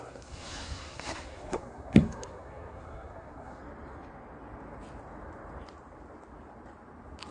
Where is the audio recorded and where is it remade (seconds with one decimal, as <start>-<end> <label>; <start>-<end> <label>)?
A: 0.0-3.6 remade; 3.6-7.3 recorded